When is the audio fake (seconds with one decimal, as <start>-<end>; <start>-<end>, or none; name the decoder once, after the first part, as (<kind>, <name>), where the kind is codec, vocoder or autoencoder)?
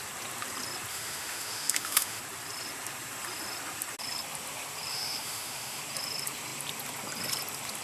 0.9-2.2 (autoencoder, DAC-VAE); 4.9-5.8